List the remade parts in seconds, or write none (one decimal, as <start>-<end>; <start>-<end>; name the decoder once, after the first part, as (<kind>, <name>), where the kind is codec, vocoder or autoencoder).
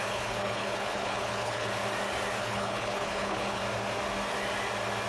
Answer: 0.0-1.8 (codec, HILCodec); 2.4-3.6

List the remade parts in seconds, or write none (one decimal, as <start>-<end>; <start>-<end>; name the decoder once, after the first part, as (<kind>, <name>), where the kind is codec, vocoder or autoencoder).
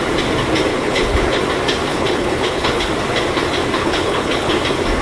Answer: 0.7-1.4 (codec, HILCodec); 1.9-2.9; 3.8-4.5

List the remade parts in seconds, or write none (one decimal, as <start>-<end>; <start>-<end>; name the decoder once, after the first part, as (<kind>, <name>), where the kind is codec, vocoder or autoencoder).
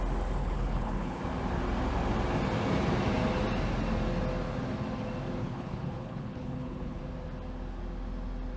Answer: 0.4-1.2 (codec, HILCodec); 5.4-7.0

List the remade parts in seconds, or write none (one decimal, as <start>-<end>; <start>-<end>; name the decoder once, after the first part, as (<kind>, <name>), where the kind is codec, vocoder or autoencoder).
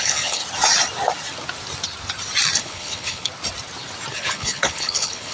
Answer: 0.0-0.4 (codec, HILCodec); 2.6-3.3; 4.1-5.3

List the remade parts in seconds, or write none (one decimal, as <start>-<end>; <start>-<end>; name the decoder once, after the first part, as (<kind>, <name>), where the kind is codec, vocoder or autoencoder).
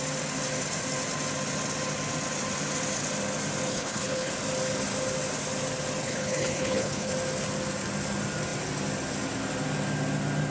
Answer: 3.7-4.3 (codec, HILCodec); 6.0-7.1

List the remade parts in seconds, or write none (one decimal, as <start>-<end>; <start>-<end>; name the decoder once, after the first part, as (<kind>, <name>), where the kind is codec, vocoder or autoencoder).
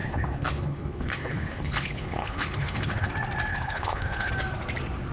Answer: 0.0-3.1 (codec, HILCodec); 3.5-4.3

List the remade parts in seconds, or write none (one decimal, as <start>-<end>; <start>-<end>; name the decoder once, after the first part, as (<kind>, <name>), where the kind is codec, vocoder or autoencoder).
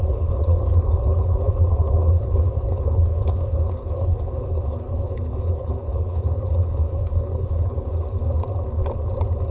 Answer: 0.0-8.2 (codec, HILCodec)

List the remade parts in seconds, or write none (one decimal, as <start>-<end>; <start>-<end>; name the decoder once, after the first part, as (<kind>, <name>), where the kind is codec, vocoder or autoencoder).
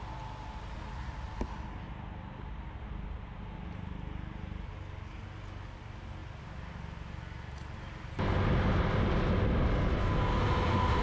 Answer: none